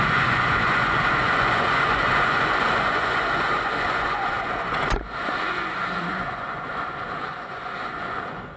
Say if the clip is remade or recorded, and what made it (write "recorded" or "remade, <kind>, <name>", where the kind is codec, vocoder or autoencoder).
remade, vocoder, Vocos